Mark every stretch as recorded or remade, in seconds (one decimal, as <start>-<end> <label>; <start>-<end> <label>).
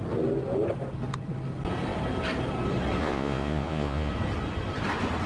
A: 0.0-3.0 recorded; 3.0-4.1 remade; 4.1-5.3 recorded